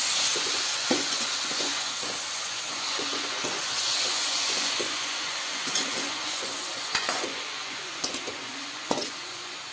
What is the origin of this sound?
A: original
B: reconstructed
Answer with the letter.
B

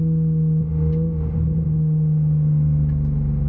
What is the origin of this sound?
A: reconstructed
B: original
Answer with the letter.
B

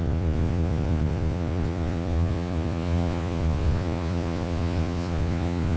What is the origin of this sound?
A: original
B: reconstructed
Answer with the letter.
B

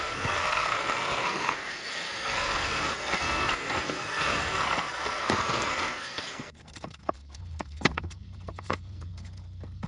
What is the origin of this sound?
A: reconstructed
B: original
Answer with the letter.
A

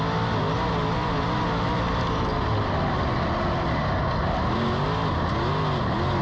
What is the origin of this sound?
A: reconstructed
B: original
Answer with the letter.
B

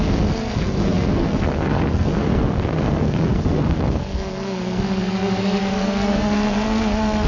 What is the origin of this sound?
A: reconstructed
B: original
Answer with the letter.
A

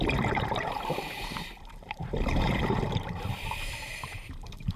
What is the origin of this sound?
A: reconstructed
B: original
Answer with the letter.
A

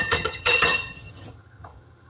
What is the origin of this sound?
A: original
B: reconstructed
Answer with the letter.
B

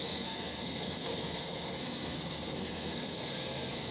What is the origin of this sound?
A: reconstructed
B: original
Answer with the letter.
A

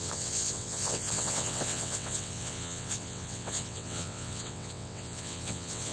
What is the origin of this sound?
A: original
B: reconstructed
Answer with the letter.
B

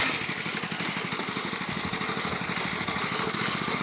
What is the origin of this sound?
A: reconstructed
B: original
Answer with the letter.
B